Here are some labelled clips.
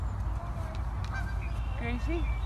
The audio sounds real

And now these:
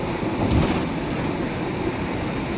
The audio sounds real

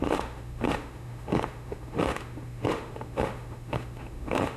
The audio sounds fake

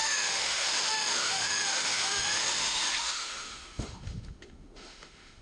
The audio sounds fake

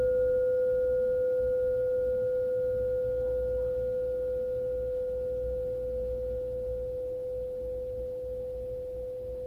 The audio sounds real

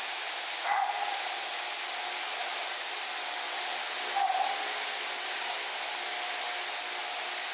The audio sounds real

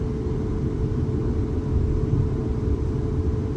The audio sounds real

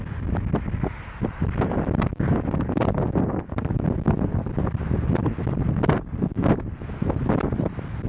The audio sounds real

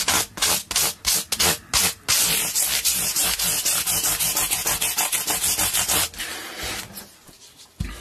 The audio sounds real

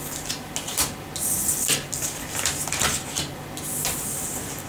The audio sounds real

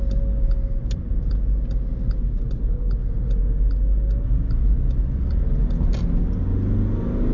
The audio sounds real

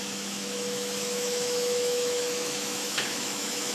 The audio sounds fake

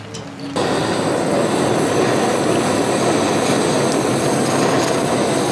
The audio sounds real